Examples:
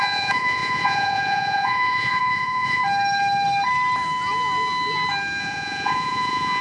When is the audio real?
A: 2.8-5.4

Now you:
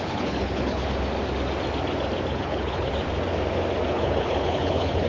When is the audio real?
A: 0.8-2.3; 2.9-3.9

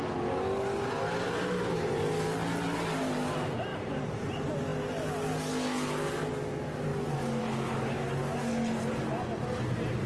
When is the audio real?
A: 0.0-3.7; 4.3-10.1